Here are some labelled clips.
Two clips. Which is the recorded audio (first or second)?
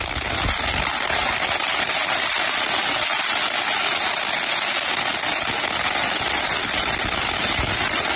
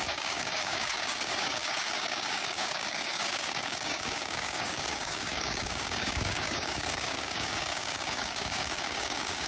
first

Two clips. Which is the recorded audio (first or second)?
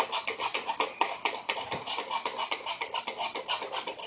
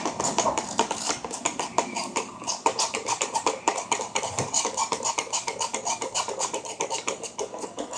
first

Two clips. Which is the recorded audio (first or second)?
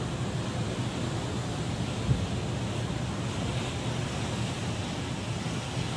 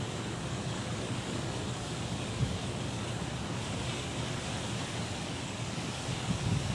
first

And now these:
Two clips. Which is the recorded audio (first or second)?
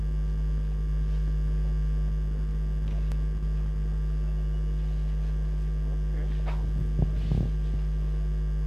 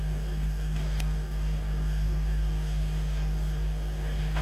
first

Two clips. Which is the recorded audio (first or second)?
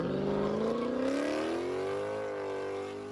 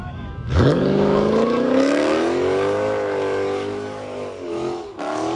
first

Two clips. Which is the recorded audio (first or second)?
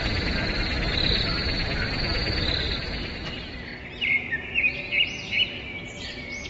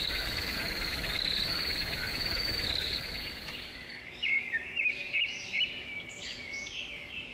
first